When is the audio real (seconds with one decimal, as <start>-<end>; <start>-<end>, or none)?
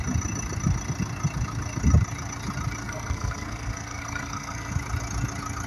0.0-2.8; 4.7-5.7